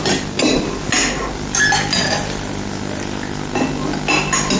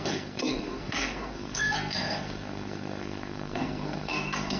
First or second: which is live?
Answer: first